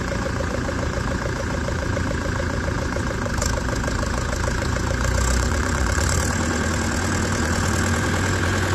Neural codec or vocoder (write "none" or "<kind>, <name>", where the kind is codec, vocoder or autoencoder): vocoder, Vocos